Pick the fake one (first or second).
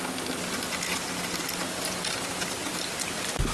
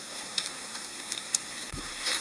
second